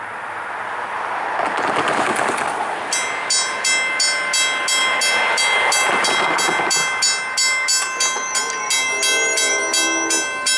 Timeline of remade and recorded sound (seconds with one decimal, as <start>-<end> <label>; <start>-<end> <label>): 0.0-10.6 recorded